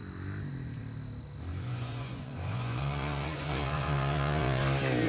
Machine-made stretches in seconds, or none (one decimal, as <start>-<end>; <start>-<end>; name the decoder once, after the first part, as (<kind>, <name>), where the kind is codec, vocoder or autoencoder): 1.5-4.6 (vocoder, Vocos)